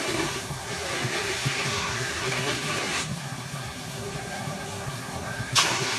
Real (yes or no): no